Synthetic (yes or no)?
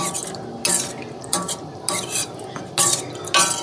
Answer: no